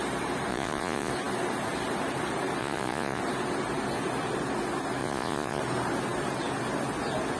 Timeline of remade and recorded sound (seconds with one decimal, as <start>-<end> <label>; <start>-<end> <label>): 0.0-0.5 recorded; 0.5-1.1 remade; 1.1-2.6 recorded; 2.6-3.2 remade; 3.2-5.0 recorded; 5.0-5.6 remade; 5.6-7.4 recorded